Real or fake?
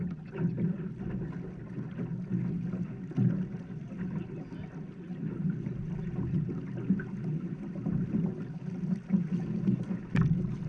real